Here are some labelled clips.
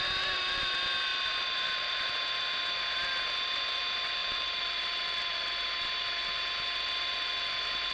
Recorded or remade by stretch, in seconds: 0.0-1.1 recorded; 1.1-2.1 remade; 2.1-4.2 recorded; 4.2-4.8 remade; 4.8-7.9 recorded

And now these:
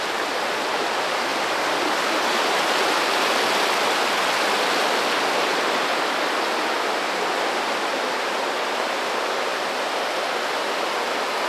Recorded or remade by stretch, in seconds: 0.0-5.5 recorded; 5.5-8.5 remade; 8.5-11.5 recorded

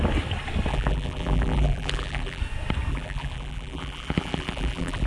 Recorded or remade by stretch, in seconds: 0.0-0.7 recorded; 0.7-2.4 remade; 2.4-2.9 recorded; 2.9-5.1 remade

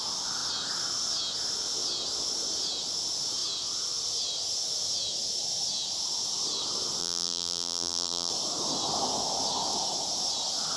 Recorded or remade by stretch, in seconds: 0.0-7.0 recorded; 7.0-8.3 remade; 8.3-10.8 recorded

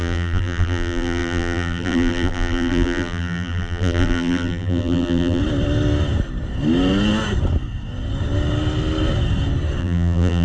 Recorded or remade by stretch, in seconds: 0.0-5.4 remade; 5.4-9.8 recorded; 9.8-10.4 remade

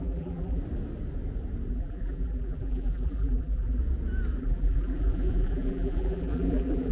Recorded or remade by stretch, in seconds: 0.0-0.6 remade; 0.6-1.7 recorded; 1.7-3.8 remade; 3.8-4.4 recorded; 4.4-6.9 remade

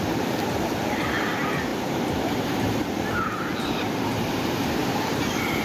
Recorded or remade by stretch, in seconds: 0.0-5.6 remade